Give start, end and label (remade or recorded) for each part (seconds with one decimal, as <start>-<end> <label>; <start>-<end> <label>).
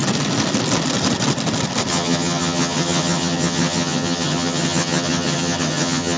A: 0.0-1.9 recorded; 1.9-6.2 remade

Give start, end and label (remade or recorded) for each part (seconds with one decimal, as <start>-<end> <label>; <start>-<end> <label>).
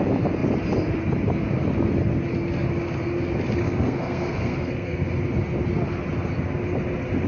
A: 0.0-3.6 recorded; 3.6-5.1 remade; 5.1-7.3 recorded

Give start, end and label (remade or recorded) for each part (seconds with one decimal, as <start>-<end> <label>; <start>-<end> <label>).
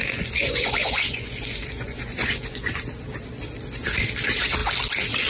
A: 0.0-2.8 remade; 2.8-5.3 recorded